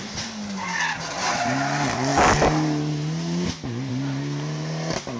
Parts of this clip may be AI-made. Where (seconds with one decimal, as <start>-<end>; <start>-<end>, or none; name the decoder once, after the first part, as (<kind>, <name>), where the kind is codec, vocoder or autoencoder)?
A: none